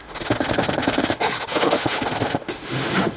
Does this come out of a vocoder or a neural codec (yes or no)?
yes